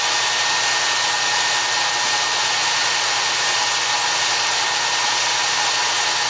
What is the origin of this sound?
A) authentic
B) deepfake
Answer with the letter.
A